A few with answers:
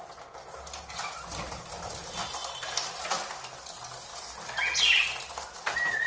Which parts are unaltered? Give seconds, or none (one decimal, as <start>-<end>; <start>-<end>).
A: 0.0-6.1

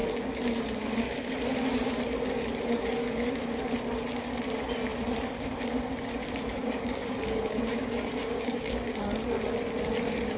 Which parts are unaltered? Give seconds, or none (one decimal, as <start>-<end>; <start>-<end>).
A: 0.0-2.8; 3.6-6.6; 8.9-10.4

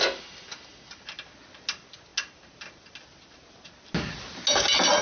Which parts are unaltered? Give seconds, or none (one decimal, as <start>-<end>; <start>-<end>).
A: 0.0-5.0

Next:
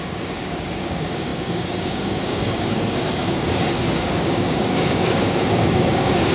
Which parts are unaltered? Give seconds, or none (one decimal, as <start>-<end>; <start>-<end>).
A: none

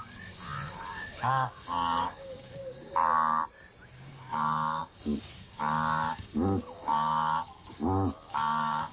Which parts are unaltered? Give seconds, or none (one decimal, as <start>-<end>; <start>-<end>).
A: 3.0-3.9

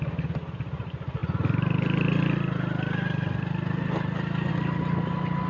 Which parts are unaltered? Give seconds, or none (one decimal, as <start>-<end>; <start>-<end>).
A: 0.0-5.5